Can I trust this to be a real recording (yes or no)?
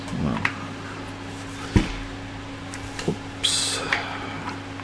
yes